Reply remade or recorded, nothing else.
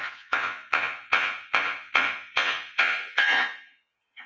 remade